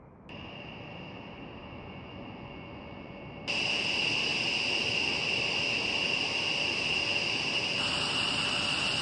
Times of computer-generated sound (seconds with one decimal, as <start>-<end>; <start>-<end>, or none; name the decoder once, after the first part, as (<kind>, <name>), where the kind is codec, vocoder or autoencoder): 1.6-3.2 (vocoder, Vocos)